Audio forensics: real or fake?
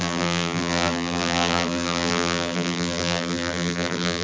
fake